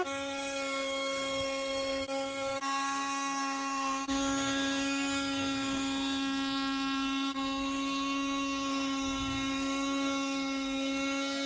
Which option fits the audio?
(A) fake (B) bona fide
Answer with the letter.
A